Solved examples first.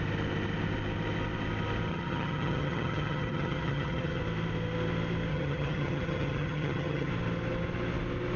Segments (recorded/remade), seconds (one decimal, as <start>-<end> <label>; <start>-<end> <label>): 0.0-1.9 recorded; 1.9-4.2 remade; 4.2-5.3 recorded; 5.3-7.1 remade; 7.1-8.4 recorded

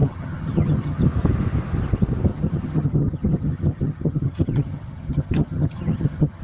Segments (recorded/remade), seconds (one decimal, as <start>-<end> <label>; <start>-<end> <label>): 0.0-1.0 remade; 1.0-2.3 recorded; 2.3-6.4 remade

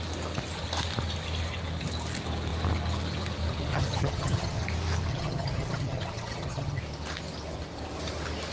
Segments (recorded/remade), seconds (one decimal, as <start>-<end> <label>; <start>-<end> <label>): 0.0-3.7 recorded; 3.7-4.6 remade; 4.6-5.1 recorded; 5.1-6.8 remade; 6.8-8.5 recorded

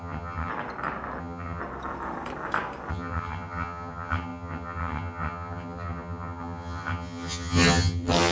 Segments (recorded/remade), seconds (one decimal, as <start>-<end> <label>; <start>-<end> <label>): 0.0-0.5 remade; 0.5-1.2 recorded; 1.2-1.6 remade; 1.6-2.9 recorded; 2.9-8.3 remade